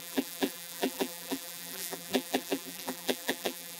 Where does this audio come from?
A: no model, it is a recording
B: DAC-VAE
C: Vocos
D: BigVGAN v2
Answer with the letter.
D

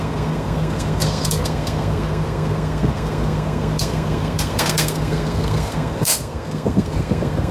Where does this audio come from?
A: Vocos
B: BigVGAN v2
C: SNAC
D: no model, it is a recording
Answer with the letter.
C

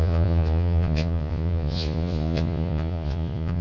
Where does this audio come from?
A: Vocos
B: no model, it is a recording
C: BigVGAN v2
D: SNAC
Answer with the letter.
A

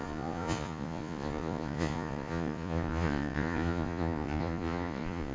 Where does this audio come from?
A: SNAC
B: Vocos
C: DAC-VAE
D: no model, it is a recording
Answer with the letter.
B